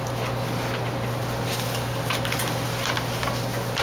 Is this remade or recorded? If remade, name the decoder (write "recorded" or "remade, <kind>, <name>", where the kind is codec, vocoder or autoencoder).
recorded